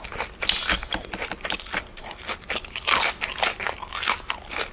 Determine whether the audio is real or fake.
real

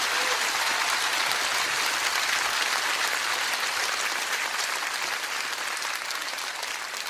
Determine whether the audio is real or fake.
real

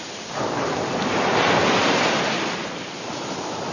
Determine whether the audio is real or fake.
real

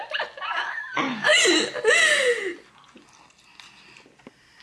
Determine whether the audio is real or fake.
real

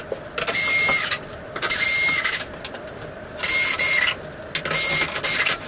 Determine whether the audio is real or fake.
real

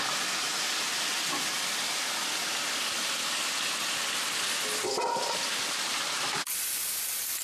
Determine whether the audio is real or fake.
real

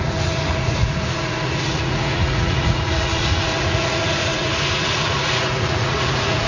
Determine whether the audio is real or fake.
fake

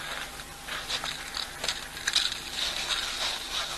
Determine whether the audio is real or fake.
real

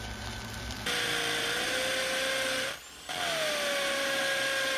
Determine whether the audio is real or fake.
real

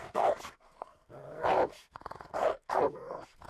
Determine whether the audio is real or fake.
fake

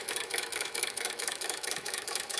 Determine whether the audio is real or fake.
fake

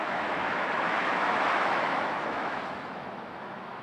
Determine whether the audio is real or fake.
fake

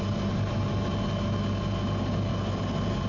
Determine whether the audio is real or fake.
real